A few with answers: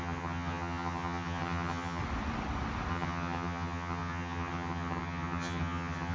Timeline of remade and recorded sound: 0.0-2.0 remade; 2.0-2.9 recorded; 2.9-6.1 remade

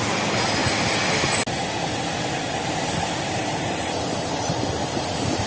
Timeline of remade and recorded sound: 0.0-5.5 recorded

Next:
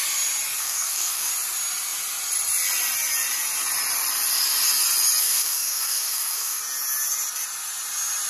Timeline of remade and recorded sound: 0.0-0.6 recorded; 0.6-1.3 remade; 1.3-5.2 recorded; 5.2-6.6 remade; 6.6-8.3 recorded

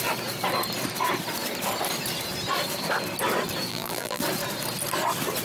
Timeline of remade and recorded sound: 0.0-3.7 recorded; 3.7-4.2 remade; 4.2-5.4 recorded

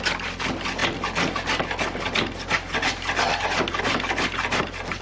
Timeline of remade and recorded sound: 0.0-5.0 recorded

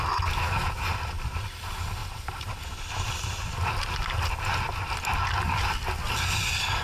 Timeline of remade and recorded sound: 0.0-6.8 recorded

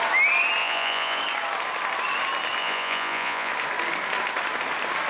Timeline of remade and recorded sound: 0.0-0.6 recorded; 0.6-1.2 remade; 1.2-2.6 recorded; 2.6-3.5 remade; 3.5-5.1 recorded

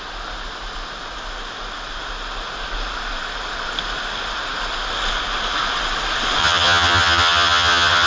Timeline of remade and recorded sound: 0.0-6.4 recorded; 6.4-8.1 remade